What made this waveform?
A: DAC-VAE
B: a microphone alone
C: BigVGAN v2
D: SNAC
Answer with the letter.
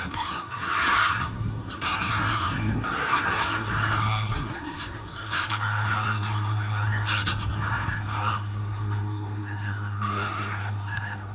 D